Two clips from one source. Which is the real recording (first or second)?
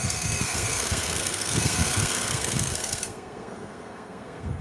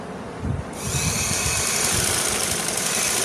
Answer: second